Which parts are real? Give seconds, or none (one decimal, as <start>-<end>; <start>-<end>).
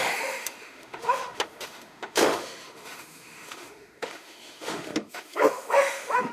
none